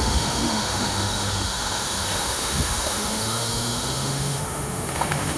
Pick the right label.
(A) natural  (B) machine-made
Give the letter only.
B